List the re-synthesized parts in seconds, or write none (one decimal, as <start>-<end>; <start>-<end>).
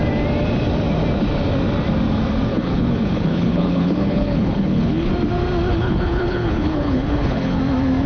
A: 2.5-5.1; 5.7-7.6